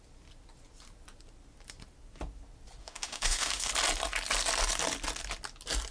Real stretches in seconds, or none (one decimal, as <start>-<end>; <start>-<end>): 0.0-2.8; 3.7-5.9